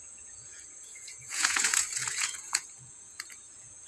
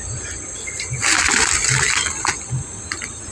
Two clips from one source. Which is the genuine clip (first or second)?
second